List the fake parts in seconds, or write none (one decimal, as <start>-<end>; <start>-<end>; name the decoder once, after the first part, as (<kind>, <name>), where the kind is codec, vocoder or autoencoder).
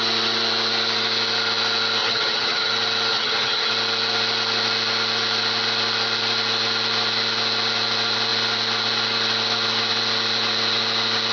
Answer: 2.0-2.7 (vocoder, HiFi-GAN); 3.1-3.7